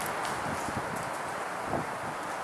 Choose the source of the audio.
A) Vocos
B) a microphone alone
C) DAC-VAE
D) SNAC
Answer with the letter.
B